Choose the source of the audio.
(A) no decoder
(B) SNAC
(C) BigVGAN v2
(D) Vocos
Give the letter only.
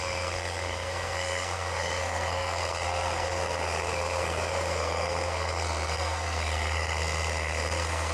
B